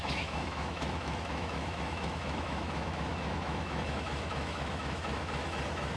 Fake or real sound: fake